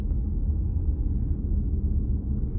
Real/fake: real